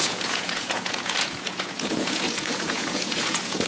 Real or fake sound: fake